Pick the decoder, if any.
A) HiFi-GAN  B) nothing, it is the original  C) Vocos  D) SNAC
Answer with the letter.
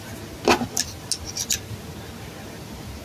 B